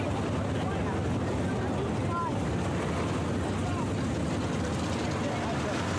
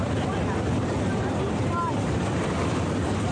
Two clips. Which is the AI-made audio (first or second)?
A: second